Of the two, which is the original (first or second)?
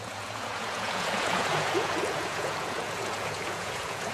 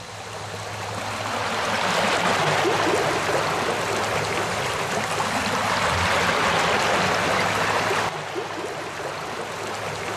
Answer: second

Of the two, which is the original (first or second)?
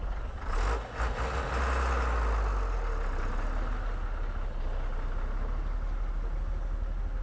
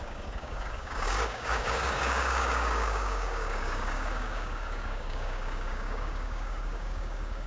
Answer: first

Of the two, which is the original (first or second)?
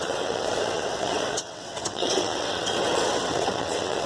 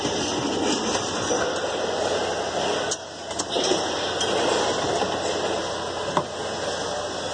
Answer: second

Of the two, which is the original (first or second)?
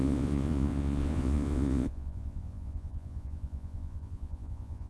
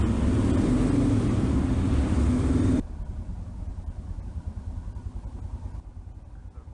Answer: second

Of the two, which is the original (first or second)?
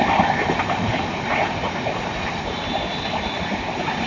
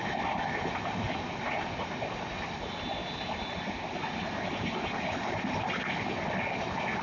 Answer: second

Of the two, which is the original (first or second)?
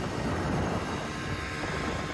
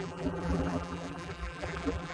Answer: first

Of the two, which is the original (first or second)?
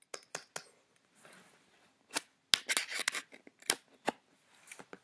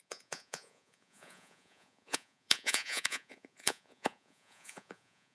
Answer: first